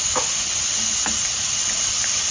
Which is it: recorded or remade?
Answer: recorded